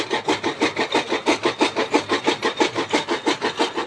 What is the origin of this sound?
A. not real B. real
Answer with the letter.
B